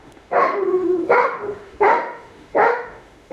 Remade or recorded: remade